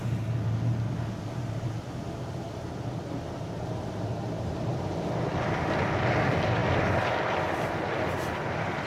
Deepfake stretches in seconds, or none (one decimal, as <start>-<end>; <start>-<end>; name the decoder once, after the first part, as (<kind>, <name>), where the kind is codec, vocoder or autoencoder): none